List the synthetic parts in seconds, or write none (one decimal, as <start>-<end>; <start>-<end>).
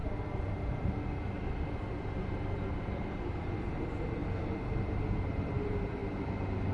2.7-4.2; 5.0-6.0